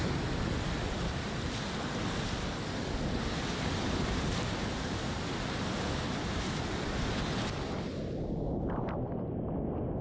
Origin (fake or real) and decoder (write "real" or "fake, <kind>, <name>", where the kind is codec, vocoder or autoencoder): real